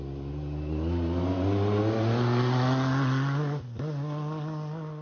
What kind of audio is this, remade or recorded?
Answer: recorded